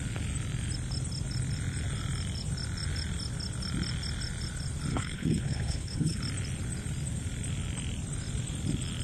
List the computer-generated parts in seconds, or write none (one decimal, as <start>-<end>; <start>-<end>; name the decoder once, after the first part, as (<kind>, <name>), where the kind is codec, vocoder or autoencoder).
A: 4.9-6.2 (codec, HILCodec)